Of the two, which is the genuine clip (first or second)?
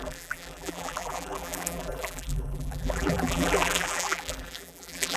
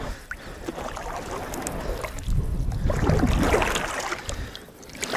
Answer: second